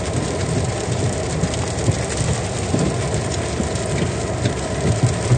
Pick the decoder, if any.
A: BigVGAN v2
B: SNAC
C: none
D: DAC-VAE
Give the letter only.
C